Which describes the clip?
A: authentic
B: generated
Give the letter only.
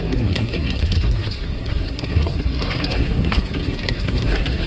B